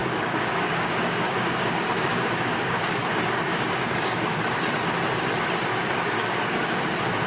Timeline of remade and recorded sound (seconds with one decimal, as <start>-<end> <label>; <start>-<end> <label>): 0.0-4.4 remade; 4.4-5.7 recorded; 5.7-6.8 remade; 6.8-7.3 recorded